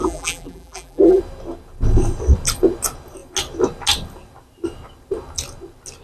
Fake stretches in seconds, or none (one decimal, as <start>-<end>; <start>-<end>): 0.0-1.2